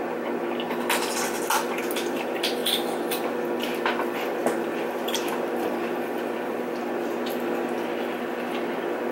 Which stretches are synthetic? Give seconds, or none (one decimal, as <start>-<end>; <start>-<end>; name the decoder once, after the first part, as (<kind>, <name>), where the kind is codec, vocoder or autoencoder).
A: 4.4-6.8 (vocoder, BigVGAN v2)